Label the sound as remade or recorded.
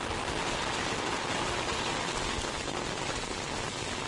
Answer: recorded